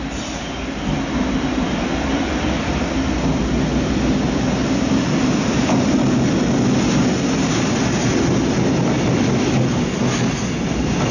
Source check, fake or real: real